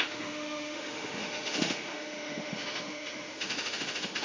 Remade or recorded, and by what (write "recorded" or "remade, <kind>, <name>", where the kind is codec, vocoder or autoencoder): remade, autoencoder, DAC-VAE